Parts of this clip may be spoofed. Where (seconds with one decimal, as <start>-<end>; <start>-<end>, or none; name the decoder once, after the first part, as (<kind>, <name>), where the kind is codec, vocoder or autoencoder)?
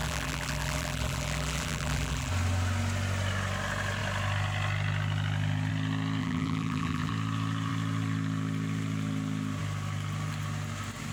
0.0-2.3 (vocoder, BigVGAN v2); 6.2-7.1